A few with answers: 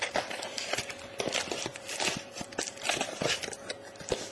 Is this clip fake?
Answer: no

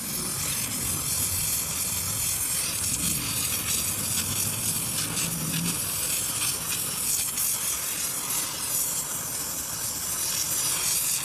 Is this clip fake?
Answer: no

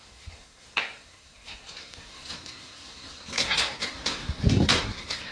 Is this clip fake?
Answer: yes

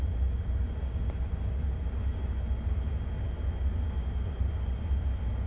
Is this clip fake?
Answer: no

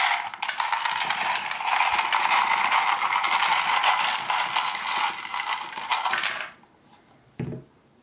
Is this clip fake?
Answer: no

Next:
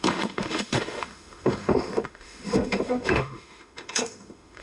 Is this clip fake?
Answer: yes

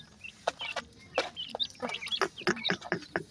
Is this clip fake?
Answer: no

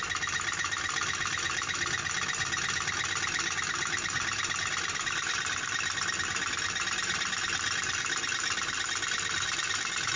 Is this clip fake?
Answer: no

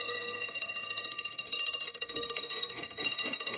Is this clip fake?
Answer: yes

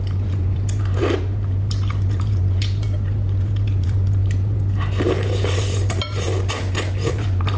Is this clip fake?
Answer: yes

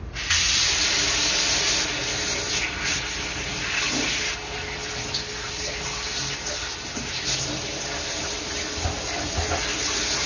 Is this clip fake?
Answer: no